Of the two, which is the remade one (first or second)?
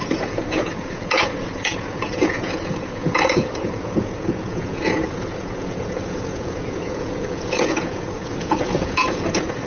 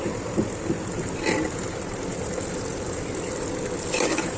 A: first